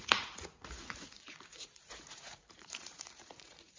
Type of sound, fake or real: fake